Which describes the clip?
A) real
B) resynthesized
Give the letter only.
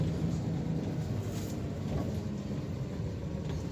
A